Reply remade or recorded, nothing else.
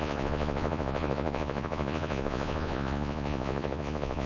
remade